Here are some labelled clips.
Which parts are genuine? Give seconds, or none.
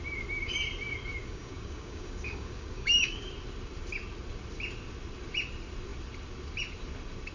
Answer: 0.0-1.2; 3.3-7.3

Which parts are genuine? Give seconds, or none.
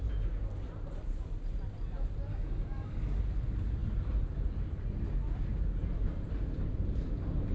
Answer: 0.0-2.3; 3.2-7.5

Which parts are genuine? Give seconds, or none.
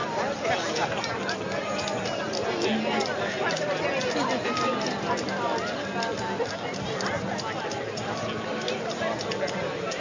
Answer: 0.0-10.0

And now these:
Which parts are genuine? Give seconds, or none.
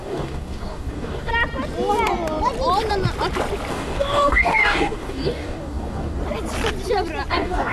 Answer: 1.3-3.7; 6.2-7.3